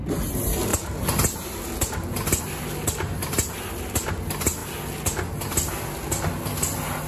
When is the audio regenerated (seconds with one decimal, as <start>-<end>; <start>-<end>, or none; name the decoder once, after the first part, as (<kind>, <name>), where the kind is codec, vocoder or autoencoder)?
none